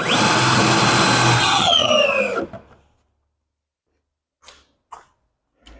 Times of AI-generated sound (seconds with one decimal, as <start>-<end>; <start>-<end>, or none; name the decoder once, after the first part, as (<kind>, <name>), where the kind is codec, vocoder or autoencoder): 1.4-1.9 (vocoder, HiFi-GAN)